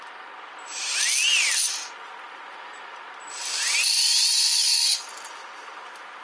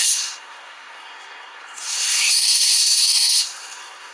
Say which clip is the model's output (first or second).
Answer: second